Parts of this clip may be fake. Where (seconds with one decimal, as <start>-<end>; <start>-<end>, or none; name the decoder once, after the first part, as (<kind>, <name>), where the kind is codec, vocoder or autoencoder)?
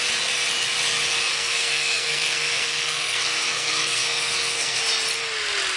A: 1.3-4.8 (codec, SNAC)